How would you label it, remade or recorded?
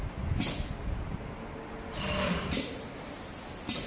recorded